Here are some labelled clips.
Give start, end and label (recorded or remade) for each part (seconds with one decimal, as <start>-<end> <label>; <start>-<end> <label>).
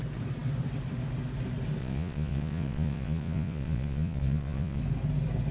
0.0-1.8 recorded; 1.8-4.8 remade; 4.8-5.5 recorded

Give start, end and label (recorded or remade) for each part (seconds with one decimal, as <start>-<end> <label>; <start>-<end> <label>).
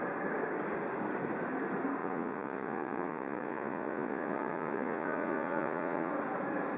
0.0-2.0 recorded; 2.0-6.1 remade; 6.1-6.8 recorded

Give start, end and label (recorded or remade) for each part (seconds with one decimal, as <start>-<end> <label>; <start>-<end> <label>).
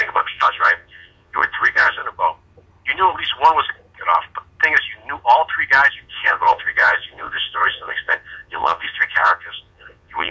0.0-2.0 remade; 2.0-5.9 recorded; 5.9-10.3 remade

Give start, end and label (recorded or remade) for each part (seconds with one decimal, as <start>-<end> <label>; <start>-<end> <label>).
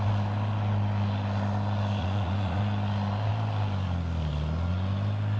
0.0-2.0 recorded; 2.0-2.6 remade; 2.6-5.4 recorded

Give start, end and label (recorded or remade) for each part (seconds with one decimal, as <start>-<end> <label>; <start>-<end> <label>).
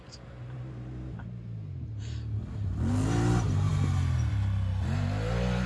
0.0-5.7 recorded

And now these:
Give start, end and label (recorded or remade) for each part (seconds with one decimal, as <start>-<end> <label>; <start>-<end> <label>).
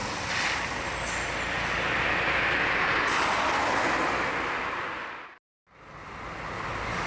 0.0-7.1 recorded